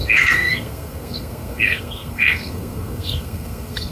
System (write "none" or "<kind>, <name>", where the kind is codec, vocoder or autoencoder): codec, SNAC